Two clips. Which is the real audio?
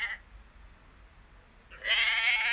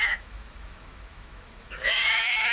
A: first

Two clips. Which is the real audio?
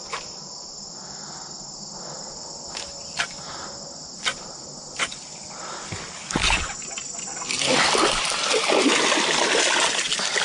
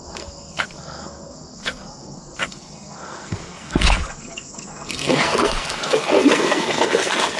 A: first